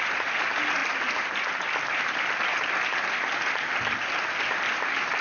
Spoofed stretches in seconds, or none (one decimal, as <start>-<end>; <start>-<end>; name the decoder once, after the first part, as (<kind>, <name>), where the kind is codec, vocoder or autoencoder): 0.8-1.9 (vocoder, BigVGAN v2)